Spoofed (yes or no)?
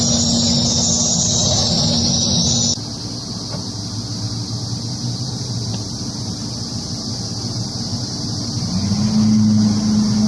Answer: no